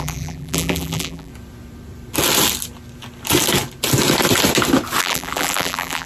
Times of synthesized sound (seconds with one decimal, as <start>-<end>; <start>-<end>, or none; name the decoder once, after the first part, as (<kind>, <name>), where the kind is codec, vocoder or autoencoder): 0.0-1.3 (vocoder, BigVGAN v2); 5.0-6.1